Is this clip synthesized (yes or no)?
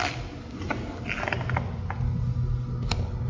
no